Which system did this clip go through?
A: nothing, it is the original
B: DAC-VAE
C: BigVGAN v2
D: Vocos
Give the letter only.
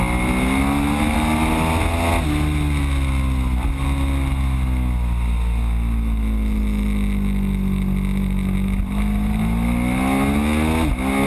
A